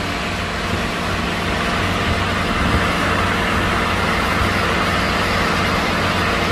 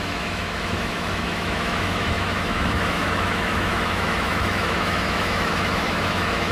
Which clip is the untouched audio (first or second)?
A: first